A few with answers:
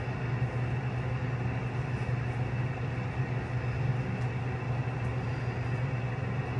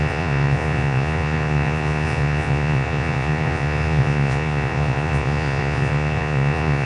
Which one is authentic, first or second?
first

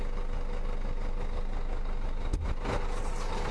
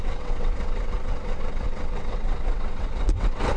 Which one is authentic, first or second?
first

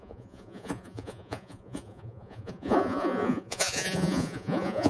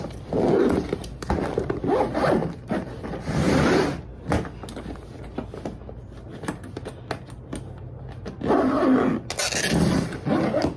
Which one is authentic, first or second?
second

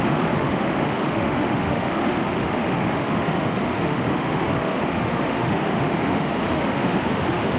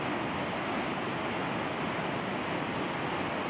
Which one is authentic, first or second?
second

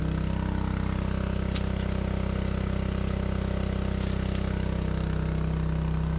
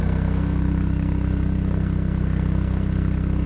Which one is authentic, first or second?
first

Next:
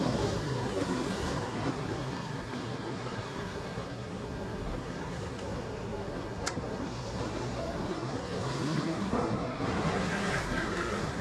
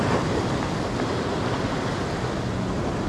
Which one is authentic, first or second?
second